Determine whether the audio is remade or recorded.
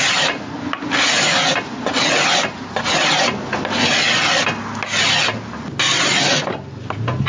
recorded